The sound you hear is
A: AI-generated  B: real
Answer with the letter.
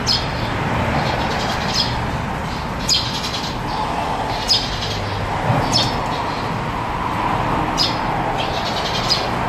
B